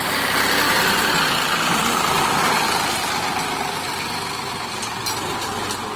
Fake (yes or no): no